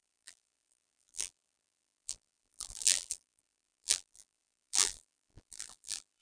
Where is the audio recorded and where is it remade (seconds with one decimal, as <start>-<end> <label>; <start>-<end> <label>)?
0.0-6.2 remade